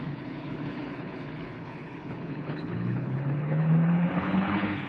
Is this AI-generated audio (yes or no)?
yes